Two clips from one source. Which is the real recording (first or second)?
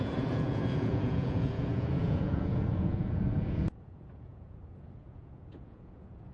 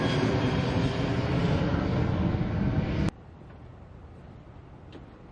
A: second